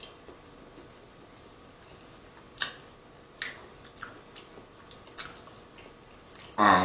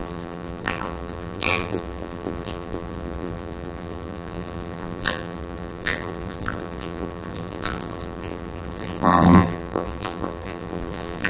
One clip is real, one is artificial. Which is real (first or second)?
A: first